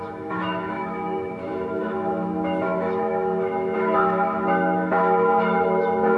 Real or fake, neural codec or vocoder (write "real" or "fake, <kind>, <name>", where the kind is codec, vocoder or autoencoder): fake, autoencoder, DAC-VAE